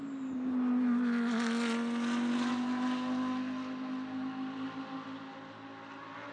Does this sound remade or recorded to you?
recorded